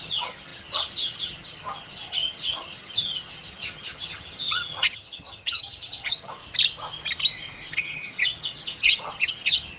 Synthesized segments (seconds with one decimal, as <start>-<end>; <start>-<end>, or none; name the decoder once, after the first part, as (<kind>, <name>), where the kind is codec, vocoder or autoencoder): 0.0-6.4 (vocoder, HiFi-GAN); 7.7-9.8